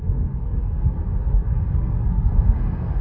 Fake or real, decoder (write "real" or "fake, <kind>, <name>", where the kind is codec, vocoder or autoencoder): fake, codec, SNAC